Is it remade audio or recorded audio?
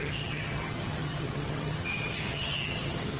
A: remade